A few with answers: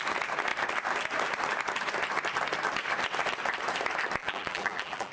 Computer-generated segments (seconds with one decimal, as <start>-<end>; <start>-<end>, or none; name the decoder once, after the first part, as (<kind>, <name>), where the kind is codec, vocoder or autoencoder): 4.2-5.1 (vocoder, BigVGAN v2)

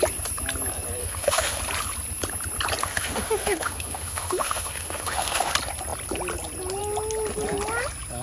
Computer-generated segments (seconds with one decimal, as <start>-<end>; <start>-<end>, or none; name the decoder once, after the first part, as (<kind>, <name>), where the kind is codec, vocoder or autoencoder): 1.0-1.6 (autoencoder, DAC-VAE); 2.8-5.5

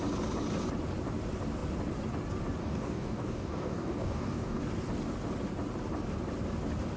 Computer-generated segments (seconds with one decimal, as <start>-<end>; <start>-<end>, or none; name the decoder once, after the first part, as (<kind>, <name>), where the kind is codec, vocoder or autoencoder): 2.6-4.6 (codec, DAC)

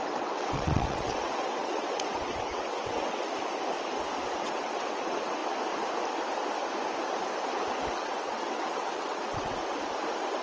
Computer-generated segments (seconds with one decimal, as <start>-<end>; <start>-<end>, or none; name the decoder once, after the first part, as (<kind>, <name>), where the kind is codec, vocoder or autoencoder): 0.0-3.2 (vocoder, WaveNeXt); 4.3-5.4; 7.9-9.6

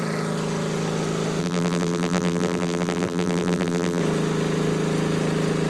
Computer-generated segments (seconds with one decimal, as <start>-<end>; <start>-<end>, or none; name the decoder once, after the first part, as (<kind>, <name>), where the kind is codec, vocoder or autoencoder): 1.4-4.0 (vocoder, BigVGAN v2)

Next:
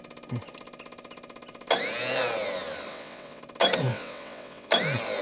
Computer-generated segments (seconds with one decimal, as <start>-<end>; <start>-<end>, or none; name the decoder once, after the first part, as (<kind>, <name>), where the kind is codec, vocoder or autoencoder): 2.9-3.4 (vocoder, WaveNeXt); 3.9-4.7

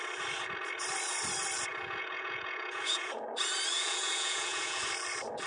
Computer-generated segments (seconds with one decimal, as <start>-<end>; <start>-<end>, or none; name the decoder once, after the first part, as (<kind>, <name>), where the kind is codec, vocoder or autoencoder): 1.7-3.2 (vocoder, Vocos); 3.7-4.8

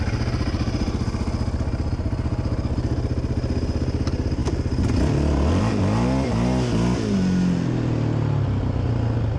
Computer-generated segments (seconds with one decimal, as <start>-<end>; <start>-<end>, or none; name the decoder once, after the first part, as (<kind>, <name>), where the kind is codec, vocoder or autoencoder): none